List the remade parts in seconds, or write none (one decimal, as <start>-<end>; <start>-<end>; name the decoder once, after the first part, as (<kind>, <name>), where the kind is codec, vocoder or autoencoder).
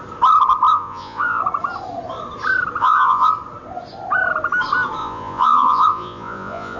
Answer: 0.7-1.4 (vocoder, Vocos); 2.8-3.3; 5.0-6.8